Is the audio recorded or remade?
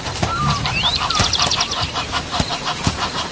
remade